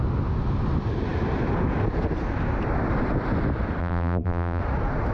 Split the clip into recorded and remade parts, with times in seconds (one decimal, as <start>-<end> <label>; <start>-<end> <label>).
0.0-3.8 recorded; 3.8-4.6 remade; 4.6-5.1 recorded